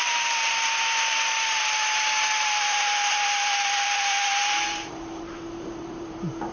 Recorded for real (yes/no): no